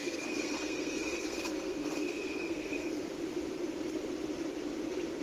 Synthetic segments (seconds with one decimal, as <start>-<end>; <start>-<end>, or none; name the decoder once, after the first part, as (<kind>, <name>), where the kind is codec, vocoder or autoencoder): 0.0-3.1 (codec, SNAC)